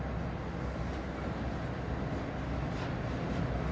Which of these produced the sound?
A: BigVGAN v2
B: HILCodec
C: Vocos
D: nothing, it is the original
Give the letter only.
D